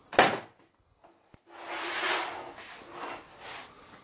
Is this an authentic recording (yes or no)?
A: yes